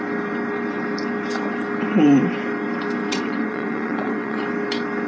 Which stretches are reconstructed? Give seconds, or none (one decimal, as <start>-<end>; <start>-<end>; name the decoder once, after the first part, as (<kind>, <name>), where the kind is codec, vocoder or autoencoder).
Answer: 3.1-4.4 (vocoder, WaveNeXt)